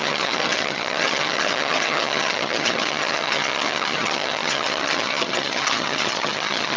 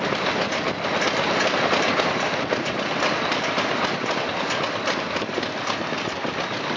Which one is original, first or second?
second